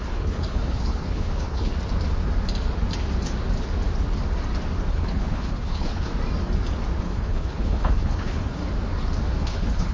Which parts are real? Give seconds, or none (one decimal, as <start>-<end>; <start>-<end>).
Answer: 1.7-4.9; 6.1-7.0; 8.6-9.4